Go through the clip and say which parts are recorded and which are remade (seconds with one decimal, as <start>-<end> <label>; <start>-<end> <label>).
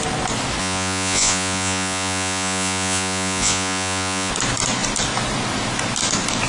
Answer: 0.0-0.6 recorded; 0.6-4.3 remade; 4.3-6.5 recorded